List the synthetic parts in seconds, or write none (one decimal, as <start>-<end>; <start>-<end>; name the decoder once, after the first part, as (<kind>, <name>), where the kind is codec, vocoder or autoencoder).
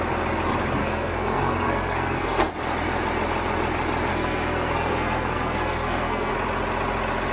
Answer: 0.8-2.5 (codec, SNAC); 4.1-6.3